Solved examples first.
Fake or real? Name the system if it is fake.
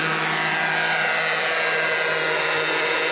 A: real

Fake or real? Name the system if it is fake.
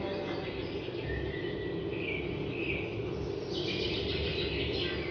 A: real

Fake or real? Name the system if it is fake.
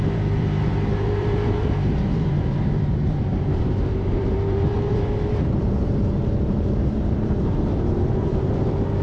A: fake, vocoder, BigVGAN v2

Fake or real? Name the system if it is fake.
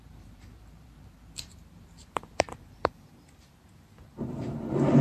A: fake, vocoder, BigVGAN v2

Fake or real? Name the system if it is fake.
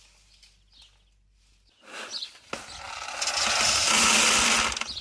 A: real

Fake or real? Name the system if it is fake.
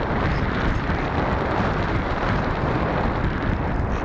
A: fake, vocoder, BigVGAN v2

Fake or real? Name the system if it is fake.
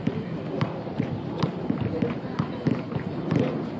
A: fake, vocoder, BigVGAN v2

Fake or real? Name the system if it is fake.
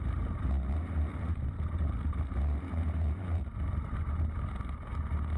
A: fake, vocoder, BigVGAN v2